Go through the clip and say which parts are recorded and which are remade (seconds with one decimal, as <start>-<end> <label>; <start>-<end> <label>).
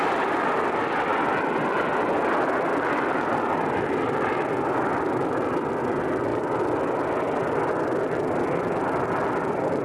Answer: 0.0-9.8 recorded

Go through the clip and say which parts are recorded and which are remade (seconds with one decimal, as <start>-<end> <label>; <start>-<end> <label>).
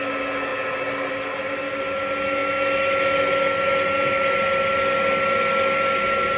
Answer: 0.0-6.4 recorded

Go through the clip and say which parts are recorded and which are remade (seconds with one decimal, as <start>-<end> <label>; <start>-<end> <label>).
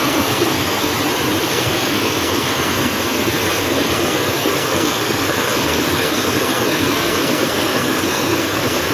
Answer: 0.0-0.9 remade; 0.9-1.4 recorded; 1.4-8.9 remade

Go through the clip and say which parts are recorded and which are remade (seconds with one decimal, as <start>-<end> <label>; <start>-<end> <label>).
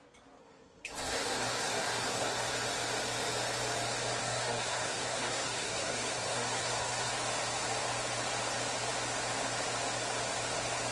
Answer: 0.0-0.4 recorded; 0.4-2.5 remade; 2.5-4.2 recorded; 4.2-7.1 remade; 7.1-10.9 recorded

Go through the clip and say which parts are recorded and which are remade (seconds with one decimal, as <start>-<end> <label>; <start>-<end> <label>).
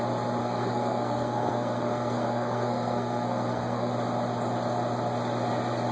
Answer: 0.0-0.4 recorded; 0.4-3.9 remade; 3.9-5.9 recorded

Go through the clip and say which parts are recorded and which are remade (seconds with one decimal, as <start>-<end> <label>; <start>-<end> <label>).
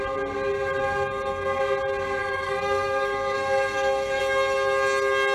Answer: 0.0-0.8 recorded; 0.8-1.6 remade; 1.6-2.2 recorded; 2.2-4.2 remade; 4.2-5.3 recorded